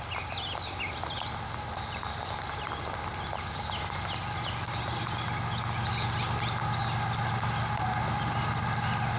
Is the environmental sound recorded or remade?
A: recorded